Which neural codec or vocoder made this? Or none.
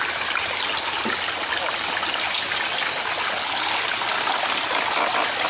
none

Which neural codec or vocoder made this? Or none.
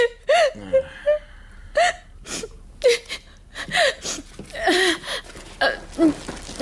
none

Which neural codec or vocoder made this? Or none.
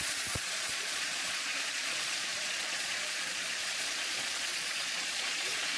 vocoder, Vocos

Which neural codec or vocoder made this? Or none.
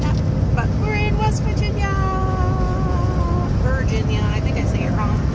none